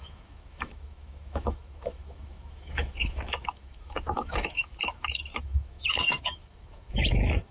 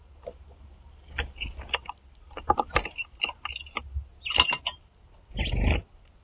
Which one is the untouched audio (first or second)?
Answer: second